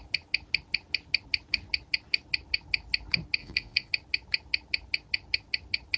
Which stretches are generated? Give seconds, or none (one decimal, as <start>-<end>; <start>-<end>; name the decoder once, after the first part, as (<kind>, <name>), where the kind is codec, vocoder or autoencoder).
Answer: 3.4-3.9 (vocoder, Vocos)